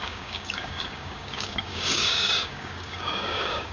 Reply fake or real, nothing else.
fake